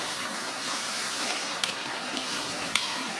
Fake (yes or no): yes